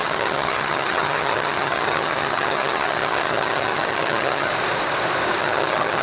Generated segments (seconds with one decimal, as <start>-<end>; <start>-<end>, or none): 0.0-4.5; 5.4-6.0